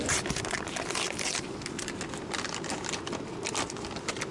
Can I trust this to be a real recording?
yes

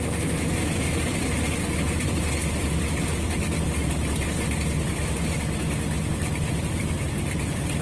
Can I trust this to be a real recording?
yes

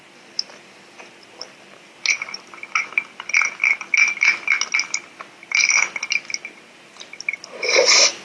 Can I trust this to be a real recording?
yes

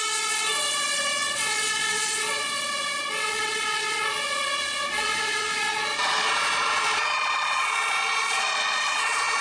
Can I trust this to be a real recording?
no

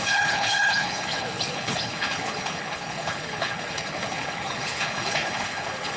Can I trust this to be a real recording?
no